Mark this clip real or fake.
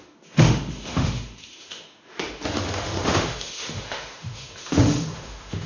fake